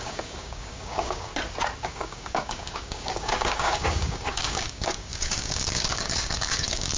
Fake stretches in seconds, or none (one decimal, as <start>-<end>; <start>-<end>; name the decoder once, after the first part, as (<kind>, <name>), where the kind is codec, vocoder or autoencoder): 0.0-1.3 (codec, DAC); 1.8-7.0